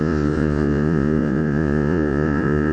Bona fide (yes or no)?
no